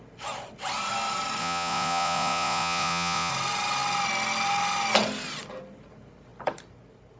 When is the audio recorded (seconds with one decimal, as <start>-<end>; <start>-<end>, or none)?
0.0-1.4; 3.3-7.2